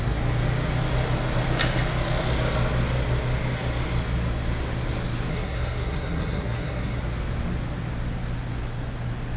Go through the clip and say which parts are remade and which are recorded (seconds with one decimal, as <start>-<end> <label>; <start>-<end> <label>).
0.0-5.3 recorded; 5.3-7.0 remade; 7.0-9.4 recorded